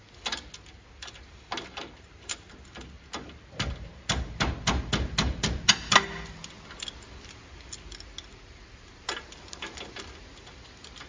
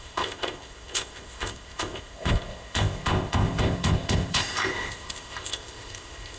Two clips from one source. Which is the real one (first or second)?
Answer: first